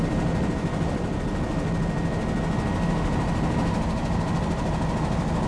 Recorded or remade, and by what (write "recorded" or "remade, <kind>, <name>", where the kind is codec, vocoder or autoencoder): recorded